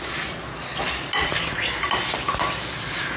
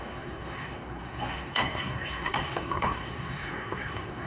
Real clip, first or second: first